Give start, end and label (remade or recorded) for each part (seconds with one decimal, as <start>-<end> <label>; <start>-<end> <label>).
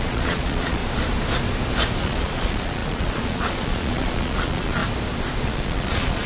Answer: 0.0-0.8 remade; 0.8-2.0 recorded; 2.0-4.8 remade; 4.8-5.4 recorded; 5.4-6.3 remade